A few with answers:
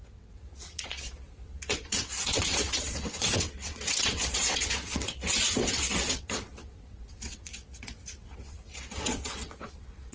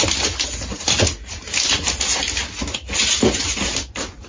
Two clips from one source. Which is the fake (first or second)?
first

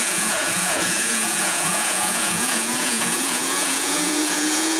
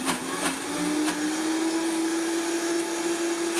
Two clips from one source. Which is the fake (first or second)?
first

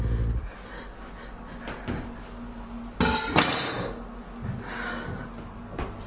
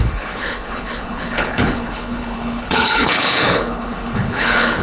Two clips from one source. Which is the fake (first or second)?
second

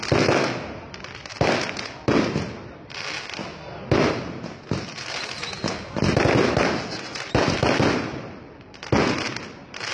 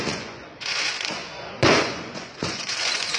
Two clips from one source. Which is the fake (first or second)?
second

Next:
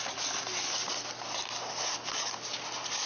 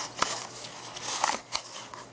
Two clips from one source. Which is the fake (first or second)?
second